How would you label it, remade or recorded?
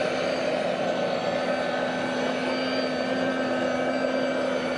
recorded